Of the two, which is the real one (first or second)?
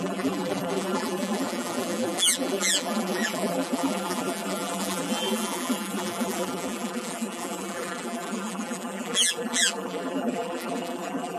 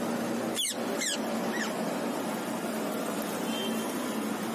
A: second